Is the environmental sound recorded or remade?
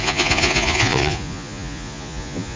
remade